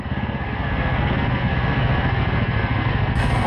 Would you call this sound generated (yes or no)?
yes